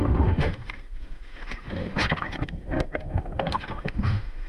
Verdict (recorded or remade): remade